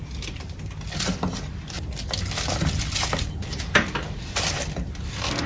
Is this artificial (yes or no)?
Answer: no